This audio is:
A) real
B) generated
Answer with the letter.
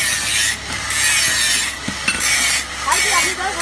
A